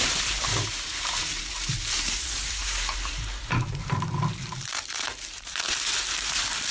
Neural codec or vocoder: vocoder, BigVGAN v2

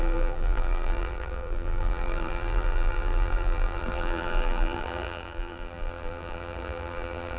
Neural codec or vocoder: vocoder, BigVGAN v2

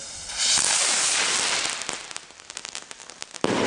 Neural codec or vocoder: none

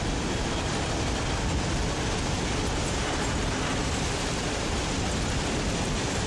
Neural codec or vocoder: none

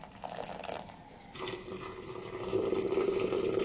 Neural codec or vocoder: none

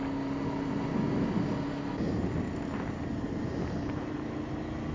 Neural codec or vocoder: none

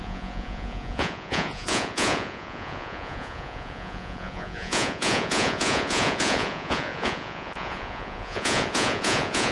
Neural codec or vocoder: vocoder, Vocos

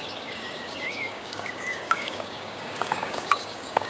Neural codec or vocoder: codec, DAC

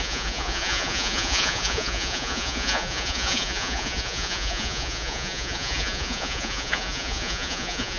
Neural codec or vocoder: vocoder, Vocos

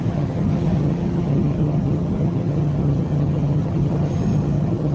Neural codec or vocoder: vocoder, HiFi-GAN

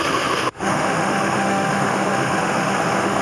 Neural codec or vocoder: autoencoder, DAC-VAE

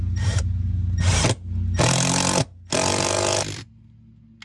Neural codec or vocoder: none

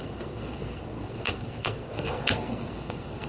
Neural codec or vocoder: codec, SNAC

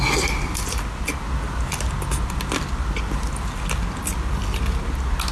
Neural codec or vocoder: none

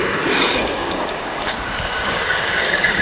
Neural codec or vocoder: codec, DAC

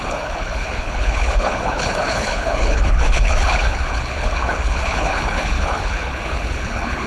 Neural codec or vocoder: codec, HILCodec